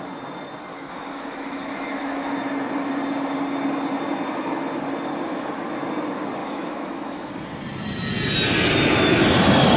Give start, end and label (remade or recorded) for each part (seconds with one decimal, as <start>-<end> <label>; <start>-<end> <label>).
0.0-0.7 recorded; 0.7-2.3 remade; 2.3-6.4 recorded; 6.4-7.3 remade; 7.3-9.8 recorded